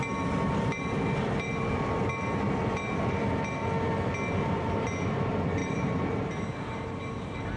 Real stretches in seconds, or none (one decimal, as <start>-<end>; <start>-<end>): 0.0-5.6; 6.9-7.6